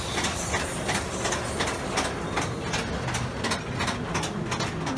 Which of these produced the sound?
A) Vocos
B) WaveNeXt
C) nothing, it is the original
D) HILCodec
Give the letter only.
C